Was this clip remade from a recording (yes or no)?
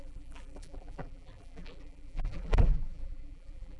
yes